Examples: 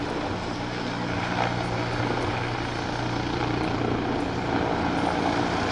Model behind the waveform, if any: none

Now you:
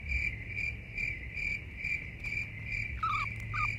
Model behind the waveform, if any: none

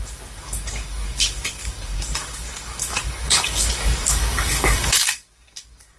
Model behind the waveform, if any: codec, DAC